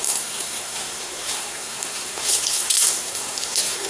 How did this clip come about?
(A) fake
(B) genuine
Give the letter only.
A